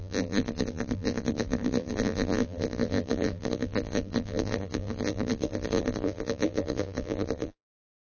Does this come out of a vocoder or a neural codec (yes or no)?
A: yes